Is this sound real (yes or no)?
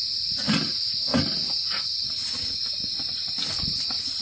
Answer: yes